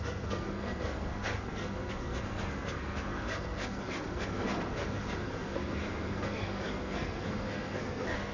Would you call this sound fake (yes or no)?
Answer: yes